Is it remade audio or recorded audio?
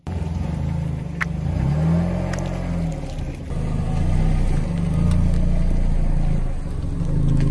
recorded